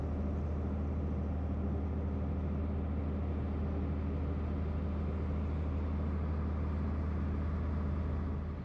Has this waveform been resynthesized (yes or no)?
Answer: no